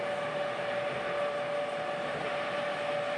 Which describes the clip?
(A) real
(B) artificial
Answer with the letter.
A